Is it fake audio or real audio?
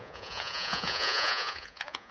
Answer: fake